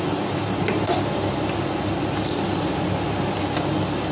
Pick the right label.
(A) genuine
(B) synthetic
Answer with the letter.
A